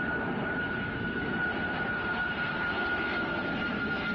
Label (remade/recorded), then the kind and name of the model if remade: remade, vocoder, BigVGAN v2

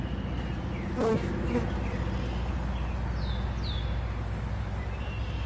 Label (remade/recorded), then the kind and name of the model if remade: recorded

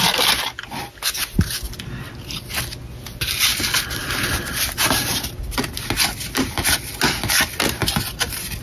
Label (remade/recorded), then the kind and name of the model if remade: recorded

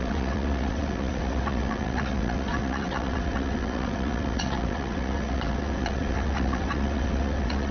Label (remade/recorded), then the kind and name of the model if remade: remade, vocoder, WaveNeXt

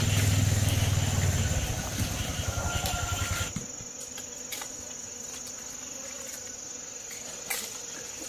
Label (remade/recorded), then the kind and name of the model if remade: recorded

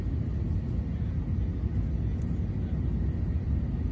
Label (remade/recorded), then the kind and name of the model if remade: recorded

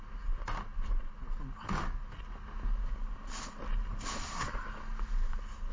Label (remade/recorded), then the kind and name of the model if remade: recorded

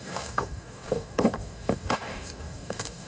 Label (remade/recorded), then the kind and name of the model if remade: remade, codec, DAC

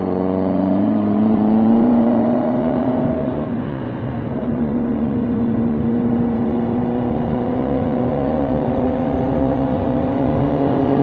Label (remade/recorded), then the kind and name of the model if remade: remade, vocoder, Vocos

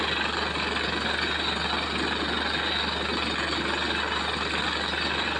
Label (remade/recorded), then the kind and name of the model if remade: recorded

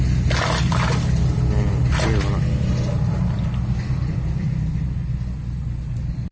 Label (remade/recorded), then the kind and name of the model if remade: recorded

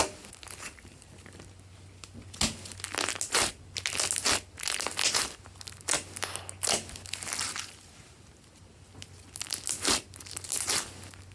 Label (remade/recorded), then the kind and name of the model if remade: recorded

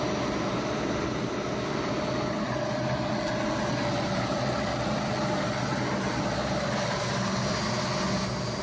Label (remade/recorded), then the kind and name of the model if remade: recorded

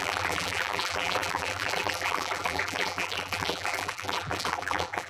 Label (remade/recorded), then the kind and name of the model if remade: remade, vocoder, BigVGAN v2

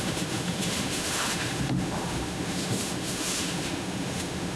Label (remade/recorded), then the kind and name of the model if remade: remade, autoencoder, DAC-VAE